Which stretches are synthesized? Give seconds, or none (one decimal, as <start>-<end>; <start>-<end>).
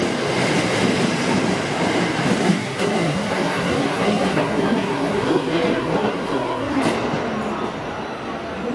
2.4-6.8